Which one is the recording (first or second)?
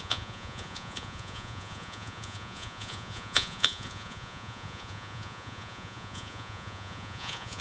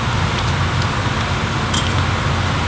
second